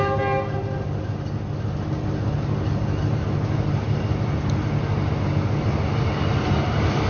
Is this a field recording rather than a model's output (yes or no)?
yes